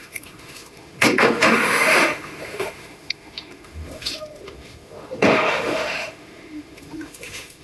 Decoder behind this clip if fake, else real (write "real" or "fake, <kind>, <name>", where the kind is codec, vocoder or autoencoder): fake, autoencoder, DAC-VAE